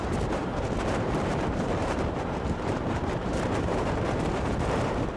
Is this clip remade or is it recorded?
remade